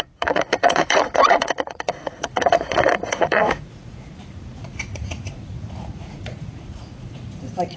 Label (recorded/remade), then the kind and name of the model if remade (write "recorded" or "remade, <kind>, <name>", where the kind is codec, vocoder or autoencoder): remade, vocoder, Vocos